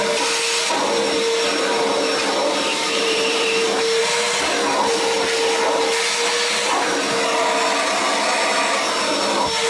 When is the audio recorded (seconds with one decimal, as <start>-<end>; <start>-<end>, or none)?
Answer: 0.0-2.7; 4.0-9.7